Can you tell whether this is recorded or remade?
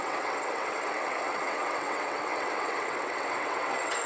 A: remade